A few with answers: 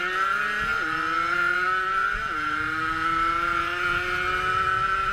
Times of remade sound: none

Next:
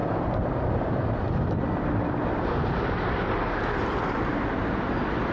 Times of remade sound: none

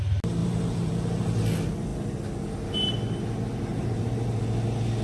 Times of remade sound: 0.4-0.9 (vocoder, BigVGAN v2); 3.7-4.4

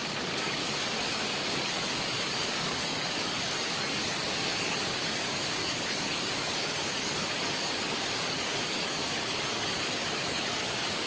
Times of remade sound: 0.0-11.1 (codec, DAC)

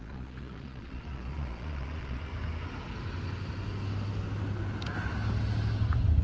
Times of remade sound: 0.0-2.3 (vocoder, Vocos)